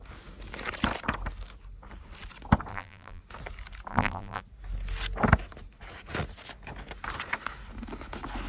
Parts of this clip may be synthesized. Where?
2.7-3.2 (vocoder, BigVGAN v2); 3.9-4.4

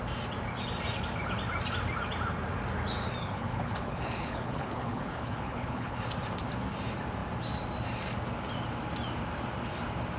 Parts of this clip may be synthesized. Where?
3.2-6.0 (codec, HILCodec)

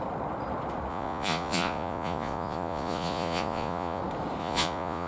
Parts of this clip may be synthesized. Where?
0.9-4.0 (vocoder, Vocos); 4.4-5.1

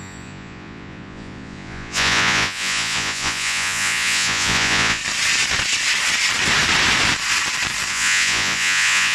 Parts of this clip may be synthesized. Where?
0.0-5.0 (vocoder, Vocos); 7.9-9.1

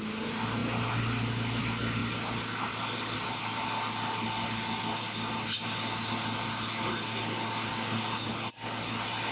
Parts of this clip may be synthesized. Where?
7.7-8.3 (codec, DAC)

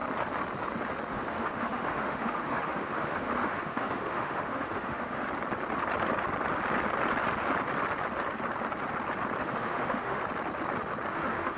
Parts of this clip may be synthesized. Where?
1.1-5.2 (autoencoder, DAC-VAE); 9.4-10.2; 11.1-11.6